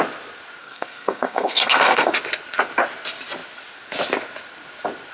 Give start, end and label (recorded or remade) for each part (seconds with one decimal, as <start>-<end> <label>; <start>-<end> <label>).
0.0-0.6 recorded; 0.6-2.1 remade; 2.1-5.1 recorded